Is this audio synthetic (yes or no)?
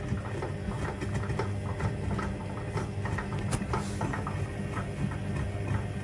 no